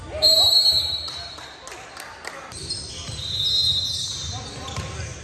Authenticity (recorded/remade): recorded